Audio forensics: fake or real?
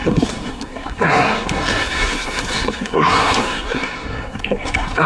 fake